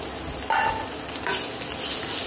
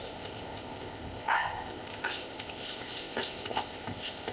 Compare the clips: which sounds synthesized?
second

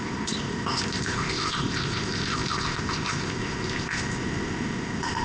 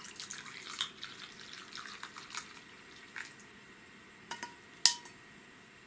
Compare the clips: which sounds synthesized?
first